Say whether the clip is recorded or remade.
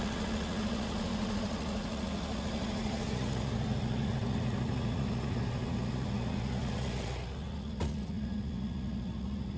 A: remade